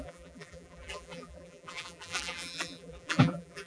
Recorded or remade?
remade